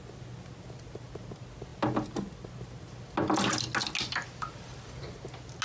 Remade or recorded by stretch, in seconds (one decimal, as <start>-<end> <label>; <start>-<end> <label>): 0.0-5.6 recorded